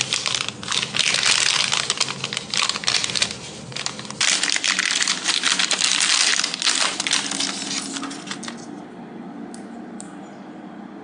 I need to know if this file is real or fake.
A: real